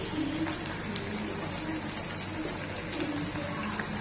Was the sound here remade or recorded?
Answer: recorded